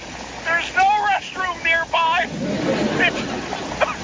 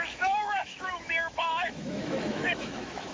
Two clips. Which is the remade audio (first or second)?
second